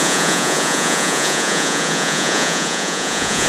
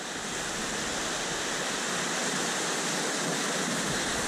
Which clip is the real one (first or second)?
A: second